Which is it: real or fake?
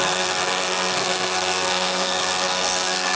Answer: fake